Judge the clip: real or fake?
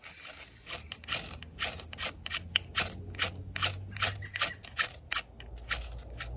real